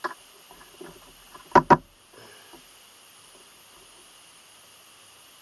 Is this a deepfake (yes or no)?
no